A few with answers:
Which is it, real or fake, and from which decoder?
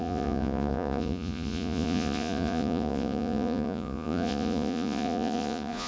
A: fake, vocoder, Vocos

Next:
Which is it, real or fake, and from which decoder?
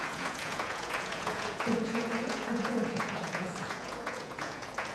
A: fake, vocoder, Vocos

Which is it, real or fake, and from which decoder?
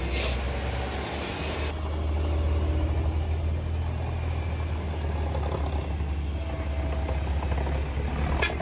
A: real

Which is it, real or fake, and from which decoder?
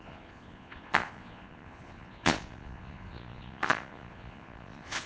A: fake, vocoder, Vocos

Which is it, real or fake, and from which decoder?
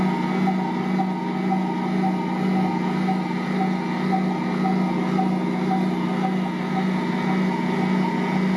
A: real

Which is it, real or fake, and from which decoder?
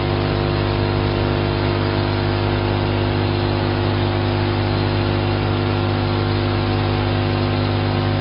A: real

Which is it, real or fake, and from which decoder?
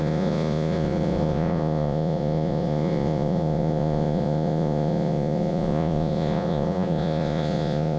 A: fake, vocoder, Vocos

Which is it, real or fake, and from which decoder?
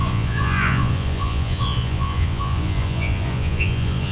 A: fake, vocoder, Vocos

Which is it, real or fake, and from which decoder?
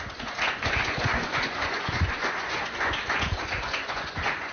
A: fake, vocoder, Vocos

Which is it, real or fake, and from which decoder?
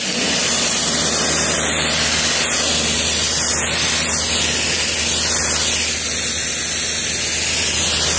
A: real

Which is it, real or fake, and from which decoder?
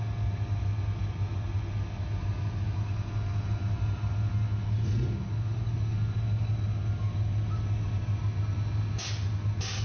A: real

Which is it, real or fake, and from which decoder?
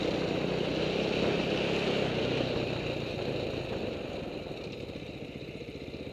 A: real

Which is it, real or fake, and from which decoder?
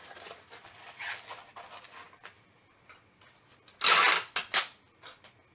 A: real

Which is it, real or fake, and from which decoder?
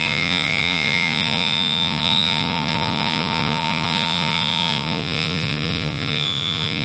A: fake, vocoder, Vocos